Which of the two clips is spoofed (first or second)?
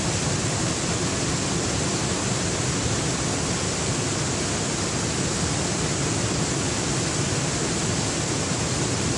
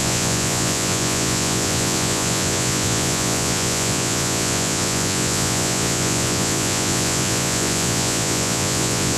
second